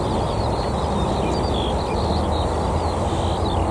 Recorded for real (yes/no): yes